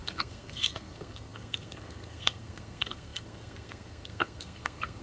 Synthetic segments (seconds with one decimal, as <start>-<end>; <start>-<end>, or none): 0.0-5.0